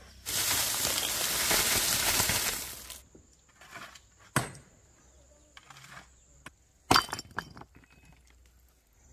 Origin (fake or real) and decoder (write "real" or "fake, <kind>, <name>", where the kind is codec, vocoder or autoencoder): real